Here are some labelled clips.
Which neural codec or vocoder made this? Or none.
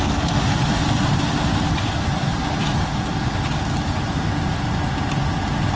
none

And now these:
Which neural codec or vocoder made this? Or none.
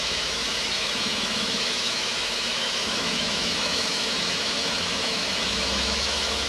autoencoder, DAC-VAE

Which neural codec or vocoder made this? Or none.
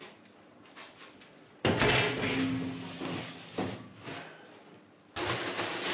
none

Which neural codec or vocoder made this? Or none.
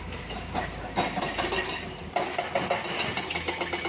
none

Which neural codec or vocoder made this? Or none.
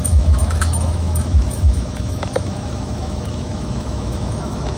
autoencoder, DAC-VAE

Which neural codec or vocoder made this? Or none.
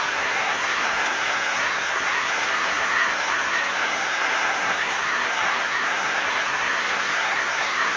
codec, SNAC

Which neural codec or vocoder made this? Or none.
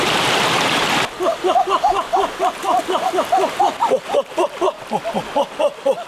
none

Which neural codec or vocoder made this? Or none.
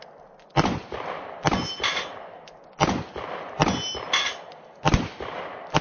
none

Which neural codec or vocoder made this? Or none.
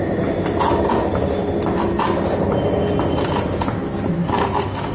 none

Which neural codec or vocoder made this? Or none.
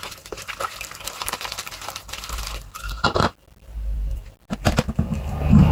none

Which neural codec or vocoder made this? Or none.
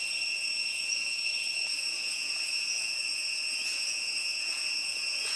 vocoder, Vocos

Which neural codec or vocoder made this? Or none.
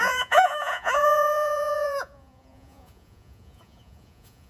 vocoder, Vocos